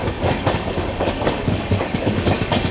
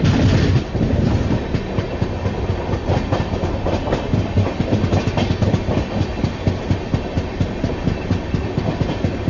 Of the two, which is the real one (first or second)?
second